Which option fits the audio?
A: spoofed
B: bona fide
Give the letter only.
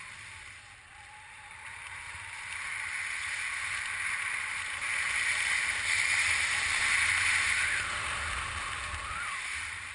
B